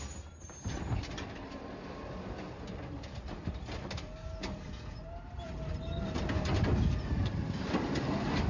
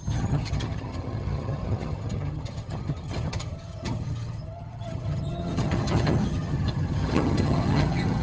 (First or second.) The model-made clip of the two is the second